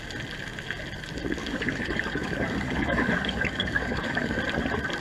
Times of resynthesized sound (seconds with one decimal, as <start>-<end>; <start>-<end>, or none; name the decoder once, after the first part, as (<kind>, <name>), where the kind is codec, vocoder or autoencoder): 1.4-4.4 (codec, DAC)